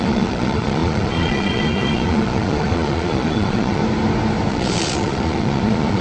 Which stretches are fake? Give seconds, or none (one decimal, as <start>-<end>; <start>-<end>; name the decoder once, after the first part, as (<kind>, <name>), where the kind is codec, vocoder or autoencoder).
0.0-3.8 (vocoder, Vocos); 4.5-6.0

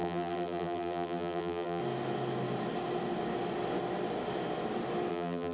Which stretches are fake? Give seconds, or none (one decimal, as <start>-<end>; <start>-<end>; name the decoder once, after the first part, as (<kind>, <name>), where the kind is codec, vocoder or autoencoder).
0.0-1.8 (vocoder, BigVGAN v2); 5.1-5.5

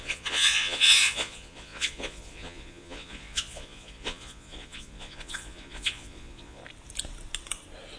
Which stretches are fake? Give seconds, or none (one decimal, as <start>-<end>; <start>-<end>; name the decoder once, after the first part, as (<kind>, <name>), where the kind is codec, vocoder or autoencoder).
0.0-6.6 (vocoder, Vocos)

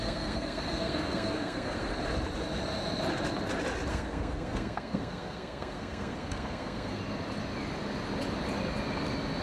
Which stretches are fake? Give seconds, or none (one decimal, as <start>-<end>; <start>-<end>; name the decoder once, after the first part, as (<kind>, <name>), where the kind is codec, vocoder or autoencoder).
0.0-1.9 (codec, SNAC); 3.9-7.0

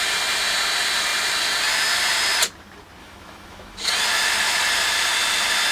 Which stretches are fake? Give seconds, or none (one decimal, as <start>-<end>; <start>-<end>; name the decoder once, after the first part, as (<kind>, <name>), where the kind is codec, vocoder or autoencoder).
3.0-3.9 (autoencoder, DAC-VAE)

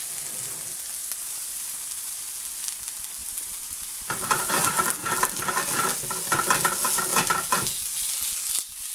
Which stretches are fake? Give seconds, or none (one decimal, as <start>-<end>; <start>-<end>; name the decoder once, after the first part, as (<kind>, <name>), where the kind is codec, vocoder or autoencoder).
1.0-2.1 (vocoder, BigVGAN v2); 3.2-4.4

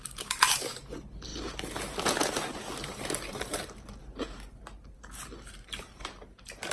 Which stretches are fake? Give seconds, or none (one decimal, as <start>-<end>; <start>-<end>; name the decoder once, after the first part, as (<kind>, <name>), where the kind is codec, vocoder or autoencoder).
0.0-6.7 (vocoder, BigVGAN v2)